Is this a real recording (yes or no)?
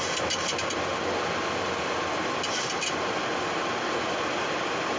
yes